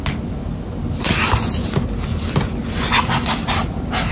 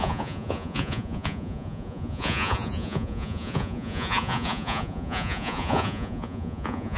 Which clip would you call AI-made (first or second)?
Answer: second